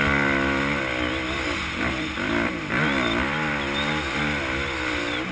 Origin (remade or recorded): recorded